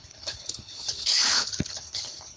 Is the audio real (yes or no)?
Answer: no